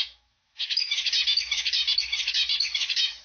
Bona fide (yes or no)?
no